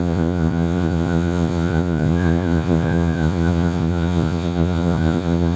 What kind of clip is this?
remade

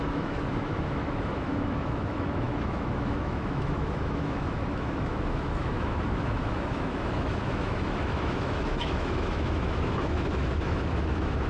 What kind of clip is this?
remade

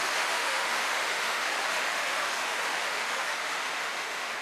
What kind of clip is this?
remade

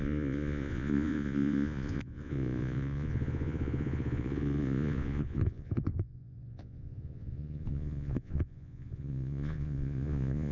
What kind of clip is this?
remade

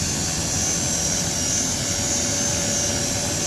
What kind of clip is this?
recorded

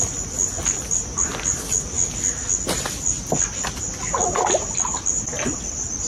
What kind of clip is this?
recorded